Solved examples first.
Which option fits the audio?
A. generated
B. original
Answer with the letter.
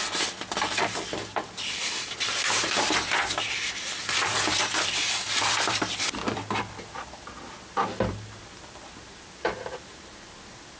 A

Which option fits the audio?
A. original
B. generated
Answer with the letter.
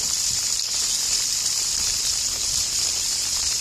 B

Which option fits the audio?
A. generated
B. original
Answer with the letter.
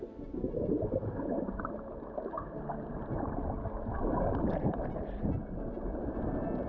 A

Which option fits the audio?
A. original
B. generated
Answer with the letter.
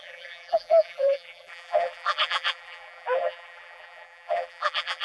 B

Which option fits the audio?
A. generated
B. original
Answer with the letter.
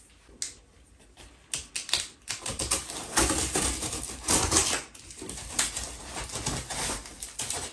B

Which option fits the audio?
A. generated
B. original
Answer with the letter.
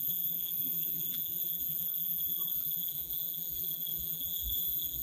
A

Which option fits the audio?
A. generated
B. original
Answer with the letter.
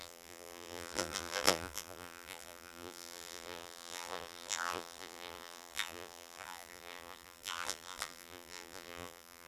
A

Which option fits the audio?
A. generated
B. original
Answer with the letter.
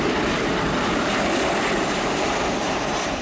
A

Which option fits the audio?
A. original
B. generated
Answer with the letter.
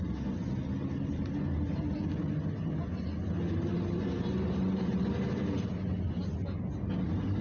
A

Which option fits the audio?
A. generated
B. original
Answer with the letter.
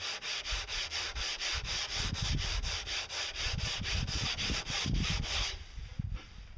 A